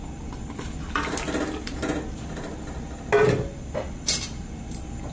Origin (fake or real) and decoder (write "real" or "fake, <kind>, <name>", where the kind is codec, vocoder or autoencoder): real